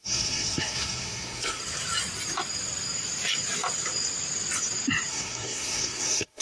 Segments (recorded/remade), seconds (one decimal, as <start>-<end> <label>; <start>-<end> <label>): 0.0-1.6 remade; 1.6-5.1 recorded; 5.1-6.4 remade